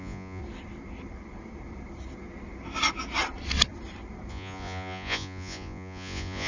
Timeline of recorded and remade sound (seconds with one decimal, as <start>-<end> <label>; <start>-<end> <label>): 0.0-0.4 remade; 0.4-4.3 recorded; 4.3-6.5 remade